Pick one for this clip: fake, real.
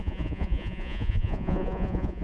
fake